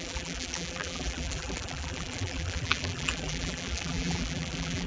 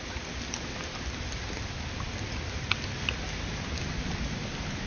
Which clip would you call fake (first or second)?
first